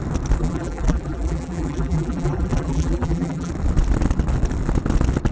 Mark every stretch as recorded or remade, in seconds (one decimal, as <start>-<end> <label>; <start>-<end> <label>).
0.0-0.4 recorded; 0.4-3.5 remade; 3.5-5.3 recorded

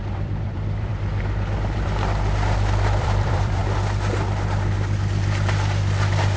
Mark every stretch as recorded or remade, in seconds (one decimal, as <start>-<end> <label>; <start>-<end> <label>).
0.0-3.6 remade; 3.6-6.4 recorded

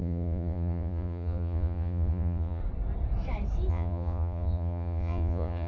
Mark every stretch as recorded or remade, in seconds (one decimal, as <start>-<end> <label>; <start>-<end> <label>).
0.0-2.6 remade; 2.6-3.7 recorded; 3.7-5.7 remade

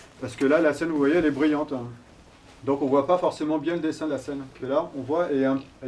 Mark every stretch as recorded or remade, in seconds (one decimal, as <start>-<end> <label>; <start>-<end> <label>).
0.0-5.9 recorded

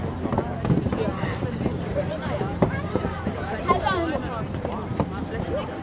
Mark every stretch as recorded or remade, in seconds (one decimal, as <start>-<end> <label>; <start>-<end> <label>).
0.0-1.1 recorded; 1.1-4.2 remade; 4.2-5.8 recorded